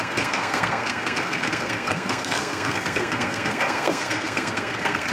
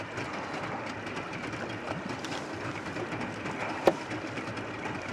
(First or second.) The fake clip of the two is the first